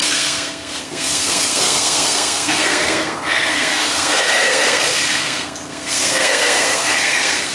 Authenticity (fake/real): fake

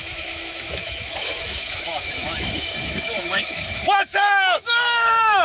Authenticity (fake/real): fake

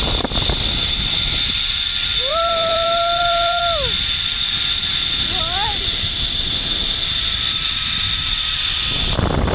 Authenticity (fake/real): fake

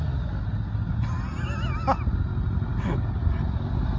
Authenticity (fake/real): real